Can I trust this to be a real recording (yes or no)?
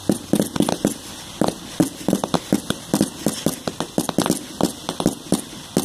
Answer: yes